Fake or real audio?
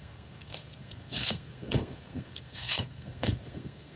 fake